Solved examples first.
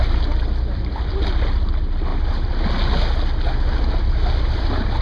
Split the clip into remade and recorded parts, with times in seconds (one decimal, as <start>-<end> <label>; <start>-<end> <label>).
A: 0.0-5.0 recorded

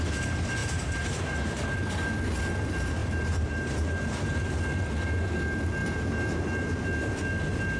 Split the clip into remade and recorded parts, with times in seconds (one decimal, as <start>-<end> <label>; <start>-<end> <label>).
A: 0.0-0.6 recorded; 0.6-1.9 remade; 1.9-3.0 recorded; 3.0-4.5 remade; 4.5-5.8 recorded; 5.8-6.4 remade; 6.4-7.8 recorded

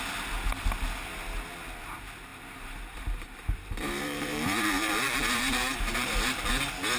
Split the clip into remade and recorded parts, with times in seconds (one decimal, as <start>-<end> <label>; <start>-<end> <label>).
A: 0.0-2.3 recorded; 2.3-6.5 remade; 6.5-7.0 recorded

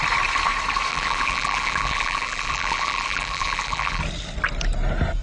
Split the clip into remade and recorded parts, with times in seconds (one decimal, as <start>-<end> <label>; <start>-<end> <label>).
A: 0.0-0.9 recorded; 0.9-4.0 remade; 4.0-5.2 recorded

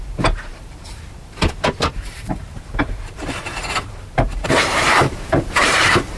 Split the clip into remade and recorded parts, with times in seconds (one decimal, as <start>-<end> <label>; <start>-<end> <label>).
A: 0.0-6.2 remade

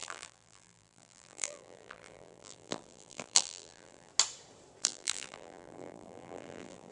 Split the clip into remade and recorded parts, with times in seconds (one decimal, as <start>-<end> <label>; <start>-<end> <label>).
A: 0.0-4.1 remade; 4.1-4.8 recorded; 4.8-6.9 remade